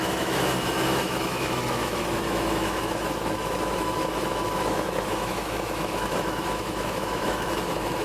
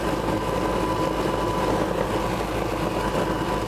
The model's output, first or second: first